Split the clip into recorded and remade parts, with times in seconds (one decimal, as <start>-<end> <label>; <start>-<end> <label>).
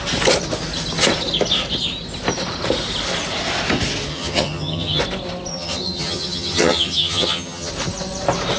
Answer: 0.0-4.1 recorded; 4.1-5.0 remade; 5.0-5.5 recorded; 5.5-7.7 remade; 7.7-8.6 recorded